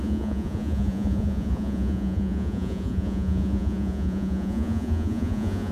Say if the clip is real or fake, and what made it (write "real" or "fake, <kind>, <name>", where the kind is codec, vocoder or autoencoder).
fake, vocoder, Vocos